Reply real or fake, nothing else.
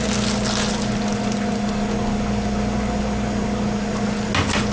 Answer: real